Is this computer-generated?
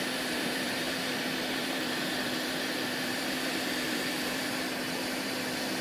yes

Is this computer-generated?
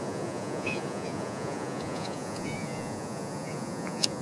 yes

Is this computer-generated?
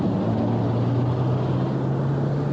no